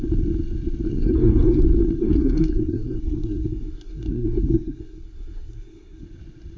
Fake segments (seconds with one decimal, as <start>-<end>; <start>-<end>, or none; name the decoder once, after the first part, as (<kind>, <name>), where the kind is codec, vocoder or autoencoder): 0.9-1.6 (codec, SNAC); 2.0-6.0